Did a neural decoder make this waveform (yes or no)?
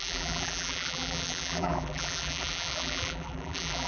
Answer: yes